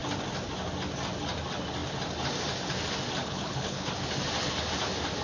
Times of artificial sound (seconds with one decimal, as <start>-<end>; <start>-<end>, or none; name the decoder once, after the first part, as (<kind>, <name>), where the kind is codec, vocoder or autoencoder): 3.2-3.9 (codec, HILCodec)